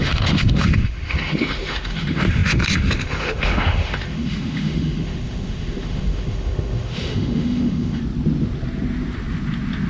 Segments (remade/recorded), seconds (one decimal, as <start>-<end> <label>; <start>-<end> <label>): 0.0-8.0 remade; 8.0-9.9 recorded